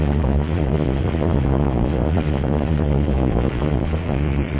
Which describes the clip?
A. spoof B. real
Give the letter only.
A